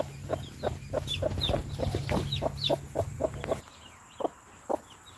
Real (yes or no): yes